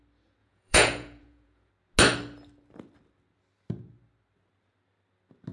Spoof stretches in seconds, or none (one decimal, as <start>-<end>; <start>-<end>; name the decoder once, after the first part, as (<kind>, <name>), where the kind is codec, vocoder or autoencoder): 0.4-1.7 (vocoder, Vocos)